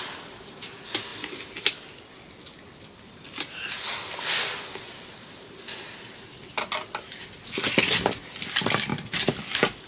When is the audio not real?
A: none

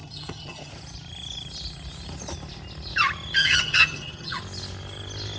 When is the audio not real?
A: 0.0-0.7 (vocoder, HiFi-GAN); 3.4-4.4